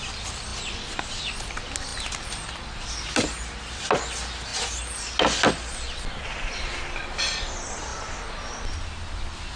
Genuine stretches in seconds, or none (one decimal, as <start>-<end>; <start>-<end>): 0.0-9.6